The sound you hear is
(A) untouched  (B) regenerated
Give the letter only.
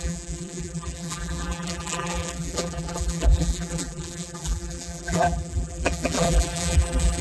B